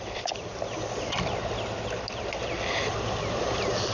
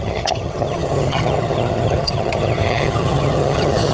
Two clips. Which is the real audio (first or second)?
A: first